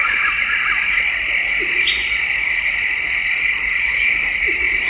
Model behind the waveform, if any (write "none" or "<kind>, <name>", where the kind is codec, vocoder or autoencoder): none